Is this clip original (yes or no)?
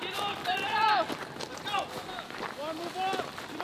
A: yes